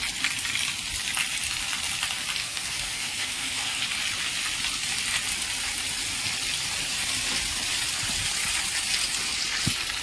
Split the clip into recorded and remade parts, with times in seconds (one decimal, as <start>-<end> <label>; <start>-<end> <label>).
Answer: 0.0-2.4 recorded; 2.4-3.8 remade; 3.8-10.0 recorded